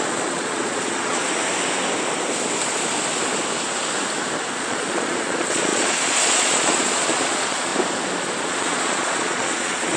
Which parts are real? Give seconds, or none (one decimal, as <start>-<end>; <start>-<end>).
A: 1.2-4.5; 7.7-8.2